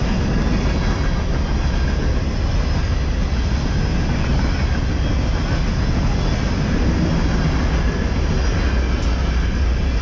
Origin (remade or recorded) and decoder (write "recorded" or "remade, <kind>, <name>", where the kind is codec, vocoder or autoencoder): recorded